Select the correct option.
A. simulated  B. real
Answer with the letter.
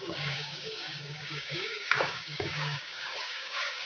A